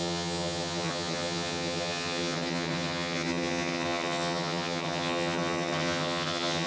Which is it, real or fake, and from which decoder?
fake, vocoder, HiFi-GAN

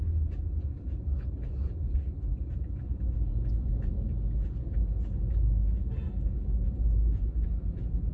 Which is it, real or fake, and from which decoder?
fake, vocoder, Vocos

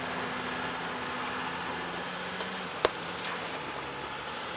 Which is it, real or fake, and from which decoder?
real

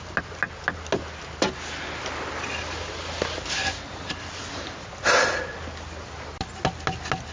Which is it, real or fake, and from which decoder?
real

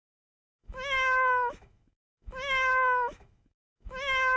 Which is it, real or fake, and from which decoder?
fake, autoencoder, DAC-VAE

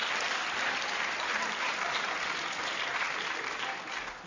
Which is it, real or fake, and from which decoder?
real